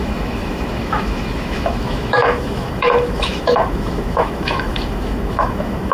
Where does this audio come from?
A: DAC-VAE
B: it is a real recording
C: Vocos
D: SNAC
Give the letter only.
A